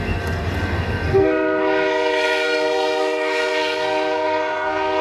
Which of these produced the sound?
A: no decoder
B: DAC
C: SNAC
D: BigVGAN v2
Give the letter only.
C